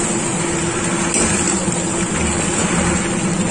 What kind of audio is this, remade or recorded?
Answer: recorded